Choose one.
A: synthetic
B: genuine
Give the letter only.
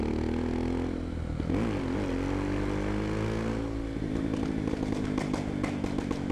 B